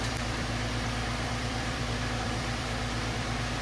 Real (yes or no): no